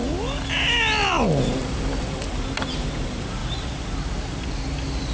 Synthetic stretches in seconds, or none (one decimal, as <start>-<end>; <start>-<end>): 1.0-3.4